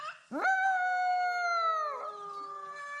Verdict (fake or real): real